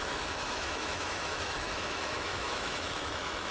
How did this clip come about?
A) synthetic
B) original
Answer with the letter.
A